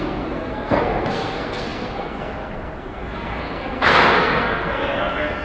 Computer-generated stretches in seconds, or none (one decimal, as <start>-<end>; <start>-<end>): 0.0-5.4